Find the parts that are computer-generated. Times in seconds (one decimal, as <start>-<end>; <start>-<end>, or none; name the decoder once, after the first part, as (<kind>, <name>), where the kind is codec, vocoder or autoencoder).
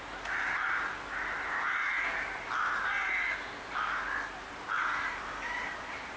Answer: none